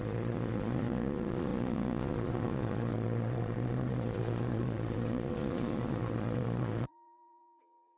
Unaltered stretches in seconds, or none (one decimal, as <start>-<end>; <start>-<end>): none